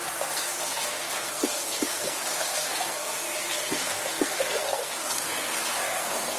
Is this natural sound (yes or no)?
no